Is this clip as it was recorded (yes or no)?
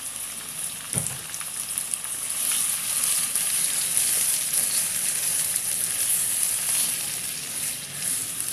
yes